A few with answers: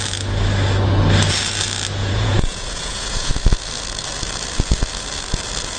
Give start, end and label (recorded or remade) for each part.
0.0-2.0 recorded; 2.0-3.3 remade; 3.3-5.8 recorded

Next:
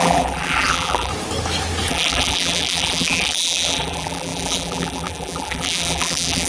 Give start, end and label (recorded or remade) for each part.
0.0-1.1 remade; 1.1-1.9 recorded; 1.9-6.5 remade

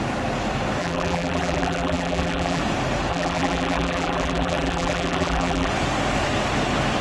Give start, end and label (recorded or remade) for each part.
0.0-0.8 recorded; 0.8-2.6 remade; 2.6-3.1 recorded; 3.1-5.7 remade; 5.7-7.0 recorded

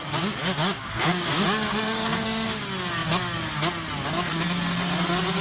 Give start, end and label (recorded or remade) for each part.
0.0-0.6 recorded; 0.6-2.6 remade; 2.6-5.4 recorded

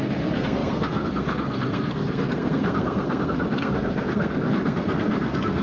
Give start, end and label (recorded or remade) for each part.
0.0-5.6 remade

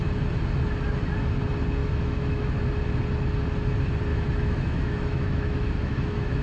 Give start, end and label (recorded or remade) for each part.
0.0-1.8 recorded; 1.8-2.5 remade; 2.5-4.1 recorded; 4.1-6.4 remade

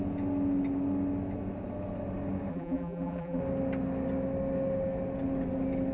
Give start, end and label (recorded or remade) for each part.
0.0-2.5 recorded; 2.5-3.4 remade; 3.4-5.9 recorded